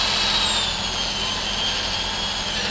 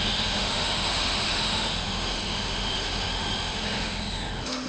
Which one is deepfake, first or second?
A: second